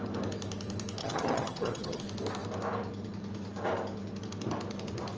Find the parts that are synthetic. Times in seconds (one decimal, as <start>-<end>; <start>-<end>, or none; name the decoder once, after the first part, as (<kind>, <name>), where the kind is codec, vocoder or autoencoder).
1.0-2.0 (vocoder, HiFi-GAN)